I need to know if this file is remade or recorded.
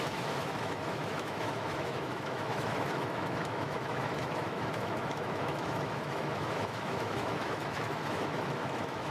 remade